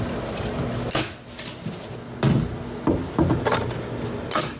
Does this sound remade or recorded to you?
recorded